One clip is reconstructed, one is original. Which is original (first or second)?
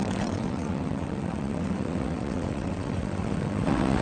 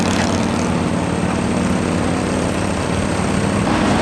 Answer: second